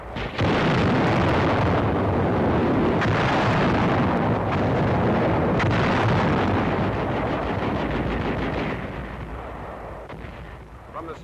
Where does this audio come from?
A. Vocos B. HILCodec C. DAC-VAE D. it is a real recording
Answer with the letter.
D